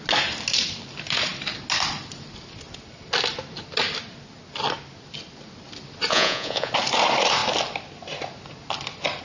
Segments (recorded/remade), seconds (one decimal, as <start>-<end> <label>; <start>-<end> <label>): 0.0-6.1 recorded; 6.1-6.7 remade; 6.7-9.2 recorded